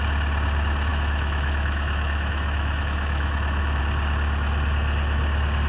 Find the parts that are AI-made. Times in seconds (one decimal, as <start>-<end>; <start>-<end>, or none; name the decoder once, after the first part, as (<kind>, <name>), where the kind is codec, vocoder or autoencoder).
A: 0.9-3.8 (autoencoder, DAC-VAE)